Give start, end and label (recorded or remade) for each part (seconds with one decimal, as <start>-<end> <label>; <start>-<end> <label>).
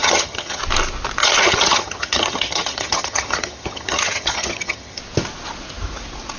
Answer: 0.0-0.6 remade; 0.6-1.2 recorded; 1.2-5.0 remade; 5.0-6.4 recorded